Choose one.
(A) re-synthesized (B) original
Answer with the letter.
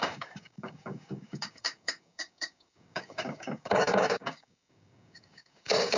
A